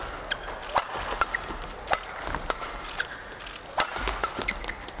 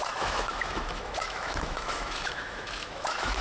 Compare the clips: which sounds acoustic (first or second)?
first